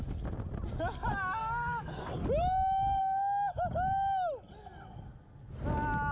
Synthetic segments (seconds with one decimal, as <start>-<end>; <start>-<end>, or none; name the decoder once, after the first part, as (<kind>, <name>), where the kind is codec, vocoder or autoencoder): 1.4-2.0 (autoencoder, DAC-VAE)